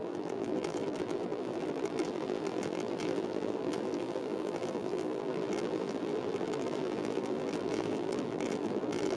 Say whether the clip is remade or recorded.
remade